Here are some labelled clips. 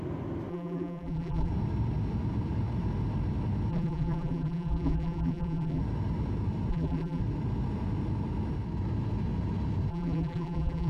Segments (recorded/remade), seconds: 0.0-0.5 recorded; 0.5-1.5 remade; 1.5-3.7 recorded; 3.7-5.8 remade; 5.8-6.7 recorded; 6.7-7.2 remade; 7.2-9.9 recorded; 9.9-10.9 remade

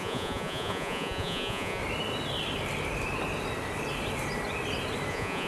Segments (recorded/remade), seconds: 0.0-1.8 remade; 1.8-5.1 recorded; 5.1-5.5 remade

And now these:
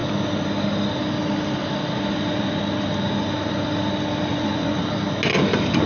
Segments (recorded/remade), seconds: 0.0-4.3 recorded; 4.3-4.8 remade; 4.8-5.9 recorded

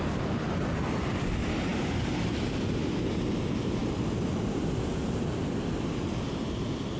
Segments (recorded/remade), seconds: 0.0-7.0 recorded

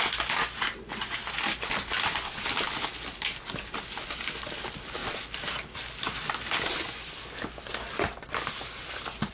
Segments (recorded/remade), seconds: 0.0-9.3 recorded

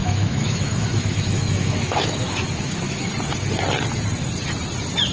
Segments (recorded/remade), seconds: 0.0-3.1 remade; 3.1-5.1 recorded

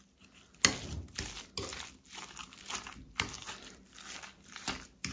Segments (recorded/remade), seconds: 0.0-5.1 recorded